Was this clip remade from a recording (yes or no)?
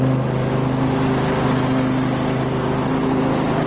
no